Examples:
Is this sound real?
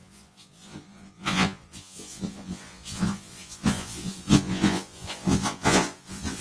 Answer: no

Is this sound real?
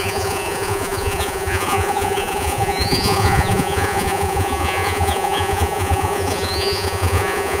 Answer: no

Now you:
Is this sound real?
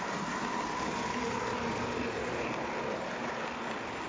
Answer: yes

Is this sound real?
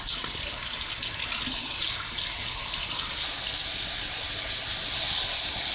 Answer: yes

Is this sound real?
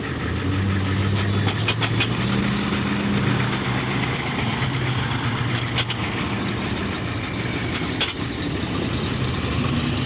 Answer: yes